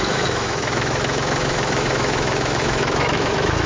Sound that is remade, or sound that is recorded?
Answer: remade